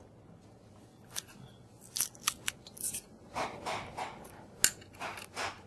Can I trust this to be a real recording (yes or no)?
yes